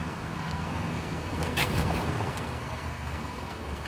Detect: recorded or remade remade